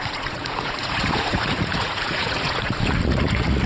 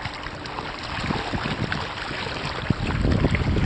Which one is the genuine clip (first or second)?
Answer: second